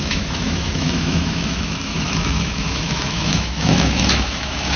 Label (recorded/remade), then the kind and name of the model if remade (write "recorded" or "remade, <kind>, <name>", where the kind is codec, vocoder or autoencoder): remade, autoencoder, DAC-VAE